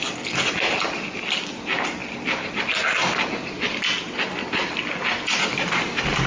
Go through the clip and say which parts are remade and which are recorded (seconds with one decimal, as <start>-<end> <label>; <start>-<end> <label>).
0.0-6.3 recorded